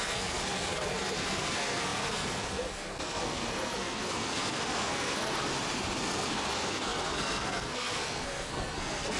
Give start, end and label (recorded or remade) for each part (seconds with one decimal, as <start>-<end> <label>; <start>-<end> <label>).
0.0-5.4 remade; 5.4-6.0 recorded; 6.0-9.2 remade